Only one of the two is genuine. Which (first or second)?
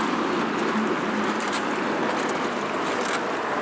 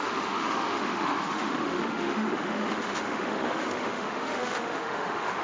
first